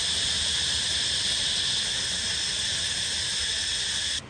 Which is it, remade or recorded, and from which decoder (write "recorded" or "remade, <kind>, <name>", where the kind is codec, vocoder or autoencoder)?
recorded